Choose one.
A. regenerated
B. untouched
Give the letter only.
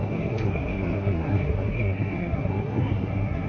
A